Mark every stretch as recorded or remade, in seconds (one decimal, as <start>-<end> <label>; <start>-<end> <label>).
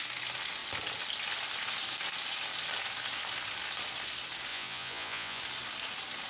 0.0-4.5 recorded; 4.5-5.4 remade; 5.4-6.3 recorded